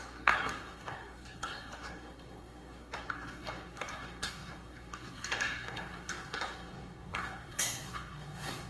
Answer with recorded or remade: remade